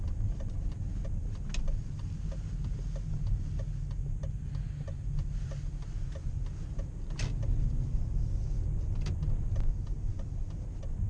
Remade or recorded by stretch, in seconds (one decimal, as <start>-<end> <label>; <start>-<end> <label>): 0.0-11.1 recorded